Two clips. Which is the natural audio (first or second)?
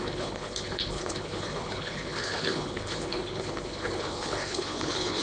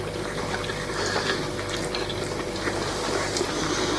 second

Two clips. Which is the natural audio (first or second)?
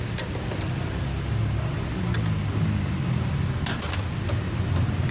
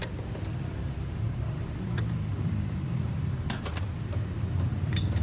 first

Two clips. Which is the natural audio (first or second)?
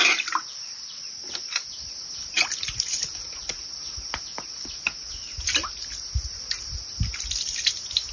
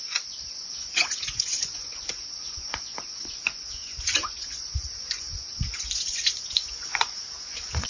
first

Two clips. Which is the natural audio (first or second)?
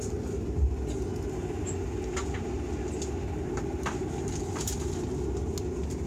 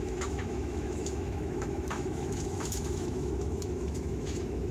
first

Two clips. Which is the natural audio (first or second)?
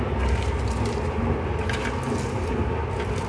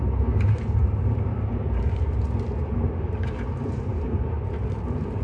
first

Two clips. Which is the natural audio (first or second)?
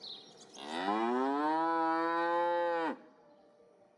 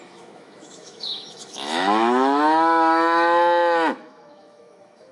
first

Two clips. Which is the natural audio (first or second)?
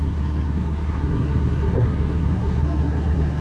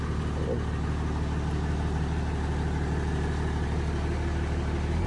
second